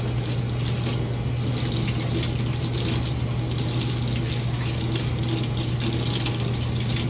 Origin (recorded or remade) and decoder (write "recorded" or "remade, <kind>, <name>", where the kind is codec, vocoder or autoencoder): recorded